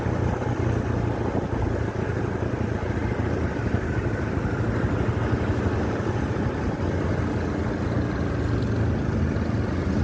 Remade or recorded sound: recorded